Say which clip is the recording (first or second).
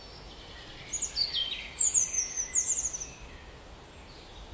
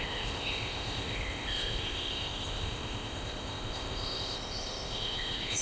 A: first